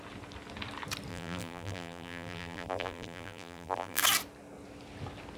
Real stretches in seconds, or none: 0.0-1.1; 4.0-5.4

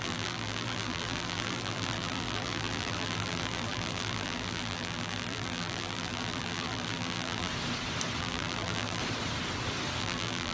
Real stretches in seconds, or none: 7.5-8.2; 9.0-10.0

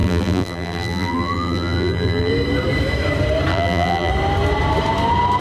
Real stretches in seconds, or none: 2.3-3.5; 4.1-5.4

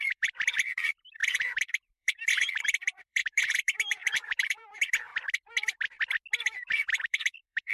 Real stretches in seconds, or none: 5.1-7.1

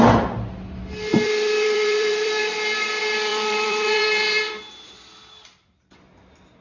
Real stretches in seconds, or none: 0.0-1.1; 2.4-3.3; 4.5-6.6

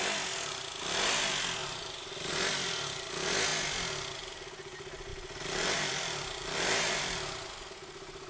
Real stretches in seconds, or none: 0.0-1.6; 2.3-5.1; 7.0-8.3

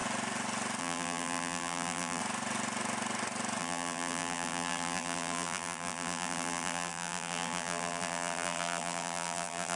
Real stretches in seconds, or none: 0.0-0.8; 2.2-3.6

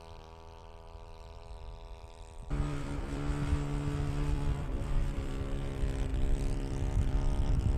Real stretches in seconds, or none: 0.0-0.6; 5.3-6.1; 7.1-7.8